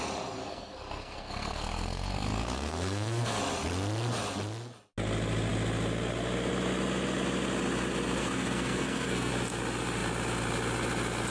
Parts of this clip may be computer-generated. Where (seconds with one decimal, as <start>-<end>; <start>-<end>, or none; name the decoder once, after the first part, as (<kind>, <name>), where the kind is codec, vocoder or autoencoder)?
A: 0.4-3.4 (codec, SNAC); 8.2-9.3